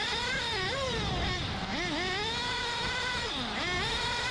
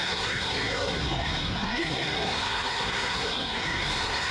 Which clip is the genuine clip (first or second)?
first